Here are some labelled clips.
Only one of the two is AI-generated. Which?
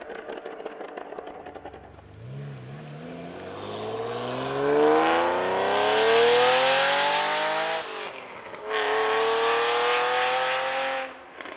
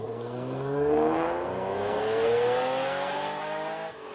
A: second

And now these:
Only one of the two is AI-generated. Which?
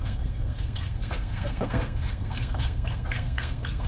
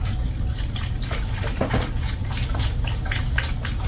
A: first